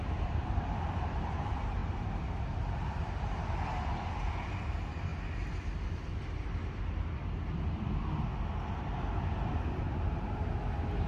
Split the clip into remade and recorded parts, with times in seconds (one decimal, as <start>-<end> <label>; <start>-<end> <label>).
0.0-11.1 recorded